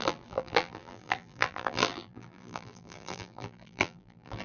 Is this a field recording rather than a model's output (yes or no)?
no